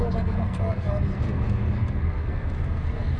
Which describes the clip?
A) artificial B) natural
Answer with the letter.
A